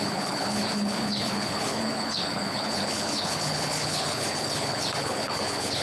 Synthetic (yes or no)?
yes